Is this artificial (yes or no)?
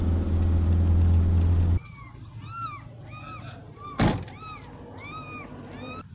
no